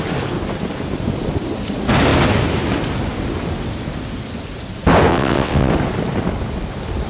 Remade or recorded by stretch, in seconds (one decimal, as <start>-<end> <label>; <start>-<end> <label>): 0.0-5.1 recorded; 5.1-5.7 remade; 5.7-7.1 recorded